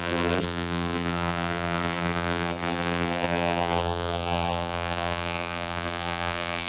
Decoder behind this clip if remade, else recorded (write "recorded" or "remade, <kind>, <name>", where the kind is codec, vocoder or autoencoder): remade, vocoder, BigVGAN v2